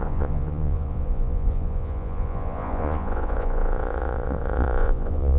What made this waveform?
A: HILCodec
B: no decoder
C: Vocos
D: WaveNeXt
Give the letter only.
C